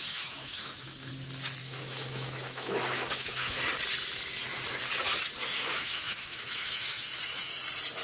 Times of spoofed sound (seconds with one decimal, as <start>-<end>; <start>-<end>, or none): 0.0-1.1; 1.6-3.6; 5.5-7.5

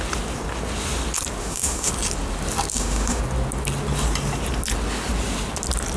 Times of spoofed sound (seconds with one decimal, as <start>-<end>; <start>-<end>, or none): 1.4-1.9; 2.7-3.2

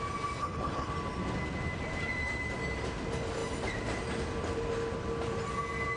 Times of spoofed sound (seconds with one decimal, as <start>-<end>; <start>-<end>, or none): 0.4-0.9

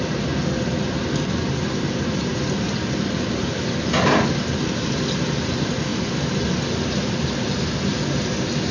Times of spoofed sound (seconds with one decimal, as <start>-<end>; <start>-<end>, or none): none

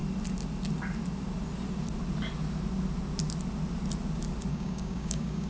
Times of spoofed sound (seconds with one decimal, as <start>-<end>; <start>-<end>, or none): 4.5-5.5